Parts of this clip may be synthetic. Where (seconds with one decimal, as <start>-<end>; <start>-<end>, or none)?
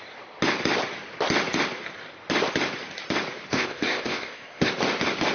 3.5-4.7